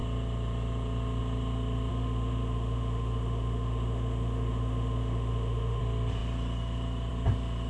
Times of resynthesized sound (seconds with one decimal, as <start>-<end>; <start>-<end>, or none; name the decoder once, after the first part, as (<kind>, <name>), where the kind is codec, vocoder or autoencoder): 1.9-5.8 (autoencoder, DAC-VAE)